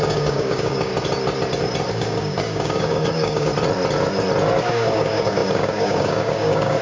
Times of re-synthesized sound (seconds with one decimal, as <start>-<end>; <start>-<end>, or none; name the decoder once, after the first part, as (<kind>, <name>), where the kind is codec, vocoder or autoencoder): 0.0-0.9 (codec, DAC); 1.9-3.5; 4.7-6.8